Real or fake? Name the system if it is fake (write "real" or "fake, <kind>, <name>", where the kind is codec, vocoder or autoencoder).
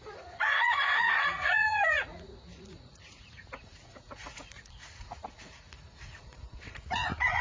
fake, vocoder, Vocos